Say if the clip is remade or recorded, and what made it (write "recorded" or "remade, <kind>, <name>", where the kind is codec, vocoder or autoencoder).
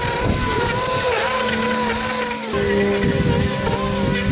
recorded